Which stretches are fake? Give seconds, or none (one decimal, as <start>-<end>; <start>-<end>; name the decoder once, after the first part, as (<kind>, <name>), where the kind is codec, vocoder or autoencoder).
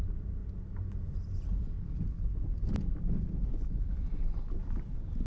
none